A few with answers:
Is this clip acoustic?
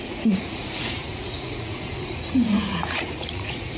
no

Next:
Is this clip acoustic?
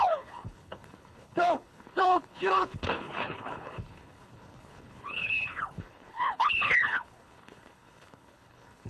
no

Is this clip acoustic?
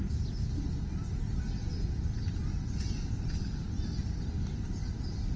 yes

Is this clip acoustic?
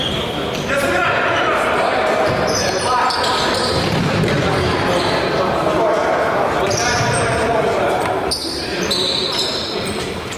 no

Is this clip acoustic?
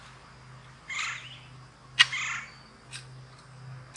yes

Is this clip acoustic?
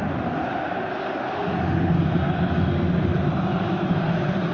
yes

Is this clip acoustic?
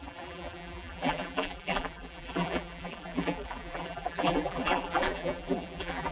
no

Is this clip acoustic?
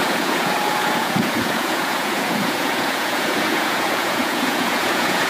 no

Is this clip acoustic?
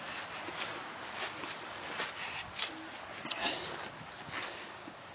yes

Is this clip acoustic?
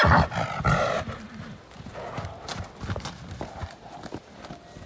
yes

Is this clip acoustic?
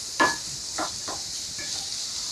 yes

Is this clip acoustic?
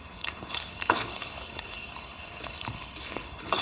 no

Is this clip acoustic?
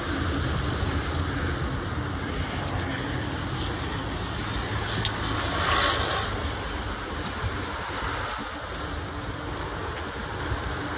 yes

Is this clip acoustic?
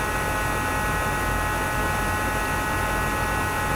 yes